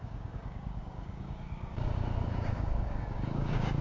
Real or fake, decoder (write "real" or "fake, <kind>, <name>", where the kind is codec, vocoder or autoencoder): fake, codec, DAC